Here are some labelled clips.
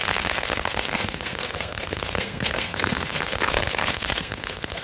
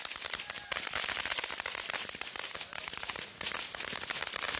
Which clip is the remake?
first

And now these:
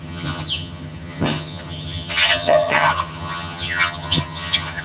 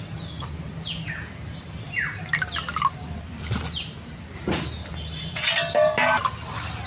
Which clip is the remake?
first